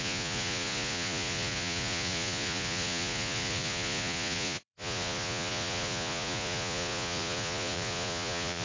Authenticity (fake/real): fake